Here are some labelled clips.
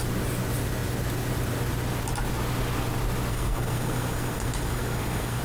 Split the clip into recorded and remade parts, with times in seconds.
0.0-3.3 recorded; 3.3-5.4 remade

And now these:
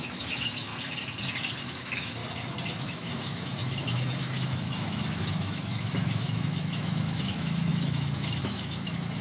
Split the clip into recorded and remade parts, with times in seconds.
0.0-0.7 remade; 0.7-1.6 recorded; 1.6-2.2 remade; 2.2-2.8 recorded; 2.8-9.2 remade

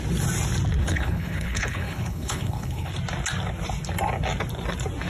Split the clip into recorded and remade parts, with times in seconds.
0.0-0.8 recorded; 0.8-2.9 remade; 2.9-5.1 recorded

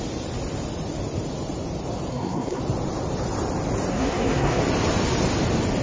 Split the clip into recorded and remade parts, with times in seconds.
0.0-2.1 recorded; 2.1-2.6 remade; 2.6-3.9 recorded; 3.9-4.6 remade; 4.6-5.8 recorded